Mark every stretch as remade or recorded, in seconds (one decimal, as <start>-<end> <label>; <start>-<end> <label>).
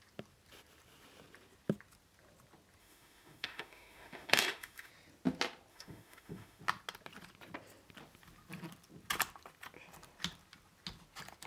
0.0-2.8 recorded; 2.8-4.9 remade; 4.9-5.7 recorded; 5.7-6.6 remade; 6.6-11.5 recorded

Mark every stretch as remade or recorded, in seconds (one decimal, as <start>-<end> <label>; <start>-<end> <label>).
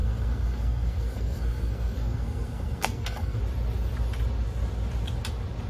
0.0-3.4 remade; 3.4-5.7 recorded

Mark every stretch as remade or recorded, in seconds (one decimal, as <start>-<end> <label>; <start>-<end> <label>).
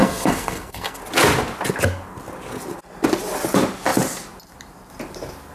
0.0-1.0 remade; 1.0-5.5 recorded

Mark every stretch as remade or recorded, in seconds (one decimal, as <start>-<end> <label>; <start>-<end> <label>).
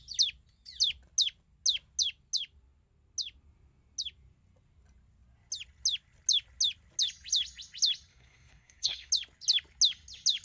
0.0-8.1 recorded; 8.1-9.1 remade; 9.1-10.4 recorded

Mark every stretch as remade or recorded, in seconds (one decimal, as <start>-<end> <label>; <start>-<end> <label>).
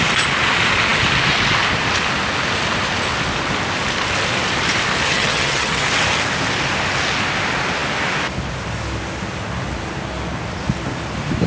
0.0-5.1 recorded; 5.1-5.8 remade; 5.8-11.5 recorded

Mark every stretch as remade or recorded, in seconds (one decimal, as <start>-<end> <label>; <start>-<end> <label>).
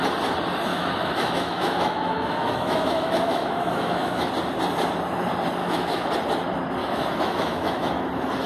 0.0-0.7 recorded; 0.7-4.3 remade; 4.3-5.6 recorded; 5.6-6.1 remade; 6.1-6.8 recorded; 6.8-7.9 remade; 7.9-8.5 recorded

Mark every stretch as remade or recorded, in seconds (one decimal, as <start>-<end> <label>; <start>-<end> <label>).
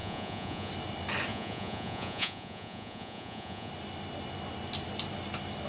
0.0-0.7 remade; 0.7-1.3 recorded; 1.3-3.7 remade; 3.7-5.7 recorded